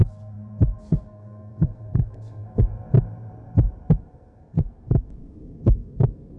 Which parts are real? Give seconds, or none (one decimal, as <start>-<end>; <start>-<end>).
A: 0.0-0.8; 2.7-4.0